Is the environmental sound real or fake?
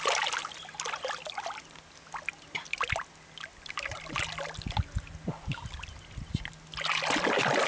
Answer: real